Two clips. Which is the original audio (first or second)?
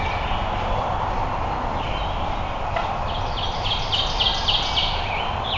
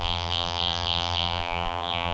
first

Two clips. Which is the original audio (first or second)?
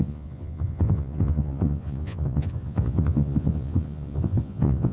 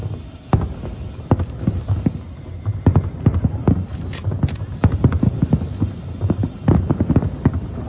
second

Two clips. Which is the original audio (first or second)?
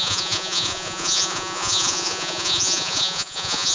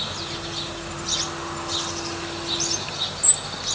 second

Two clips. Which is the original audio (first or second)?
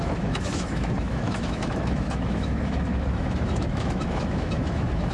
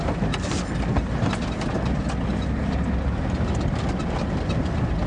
second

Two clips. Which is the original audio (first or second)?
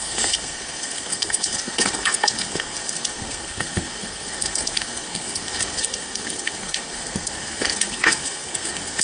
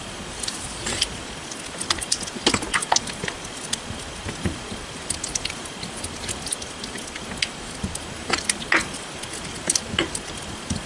second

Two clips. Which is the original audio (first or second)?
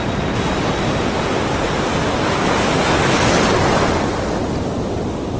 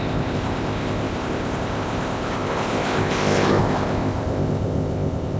first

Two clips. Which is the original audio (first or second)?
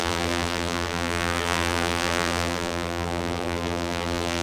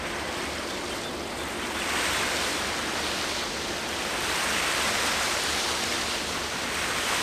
second